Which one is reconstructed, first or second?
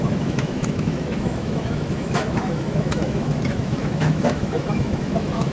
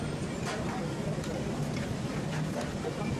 first